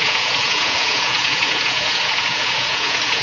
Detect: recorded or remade remade